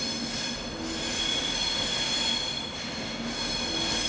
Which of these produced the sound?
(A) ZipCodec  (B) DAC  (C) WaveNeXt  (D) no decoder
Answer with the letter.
D